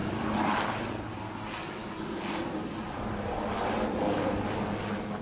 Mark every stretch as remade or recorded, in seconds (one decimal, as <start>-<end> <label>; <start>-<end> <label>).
0.0-0.9 remade; 0.9-5.2 recorded